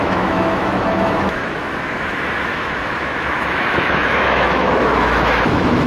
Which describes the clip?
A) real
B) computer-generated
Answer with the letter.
B